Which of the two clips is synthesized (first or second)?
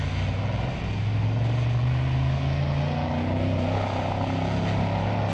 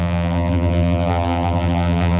second